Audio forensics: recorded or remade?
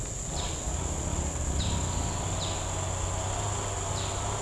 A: recorded